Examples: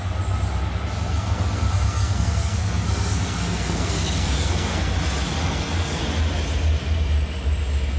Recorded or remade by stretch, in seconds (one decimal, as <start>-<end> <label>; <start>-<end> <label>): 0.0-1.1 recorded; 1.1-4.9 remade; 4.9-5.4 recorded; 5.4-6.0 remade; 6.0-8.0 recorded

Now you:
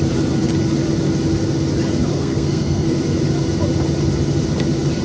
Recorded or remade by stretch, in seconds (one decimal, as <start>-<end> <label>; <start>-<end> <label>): 0.0-2.1 recorded; 2.1-3.0 remade; 3.0-5.0 recorded

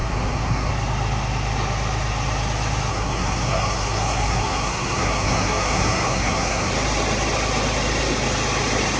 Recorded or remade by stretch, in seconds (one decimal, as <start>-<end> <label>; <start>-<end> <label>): 0.0-0.7 remade; 0.7-2.9 recorded; 2.9-6.7 remade; 6.7-9.0 recorded

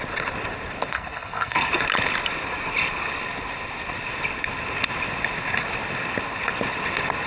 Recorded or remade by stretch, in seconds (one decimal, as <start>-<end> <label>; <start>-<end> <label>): 0.0-0.9 recorded; 0.9-1.7 remade; 1.7-7.3 recorded